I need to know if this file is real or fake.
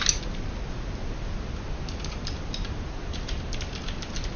real